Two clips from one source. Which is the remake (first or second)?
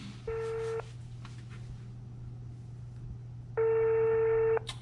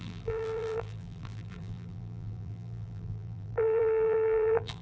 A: second